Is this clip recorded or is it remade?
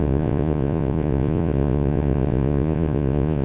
remade